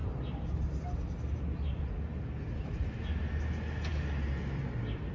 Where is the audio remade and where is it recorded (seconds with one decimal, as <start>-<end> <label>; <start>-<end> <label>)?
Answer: 0.0-5.1 recorded